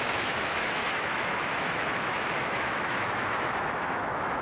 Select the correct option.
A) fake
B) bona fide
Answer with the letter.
A